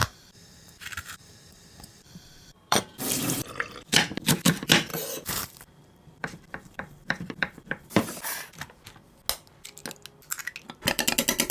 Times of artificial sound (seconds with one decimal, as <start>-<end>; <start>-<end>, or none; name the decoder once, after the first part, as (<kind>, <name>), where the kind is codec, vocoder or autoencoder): 0.0-3.4 (vocoder, BigVGAN v2); 4.9-8.8